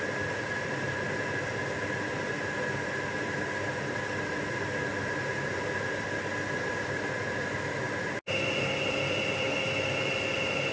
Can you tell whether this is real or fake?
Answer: real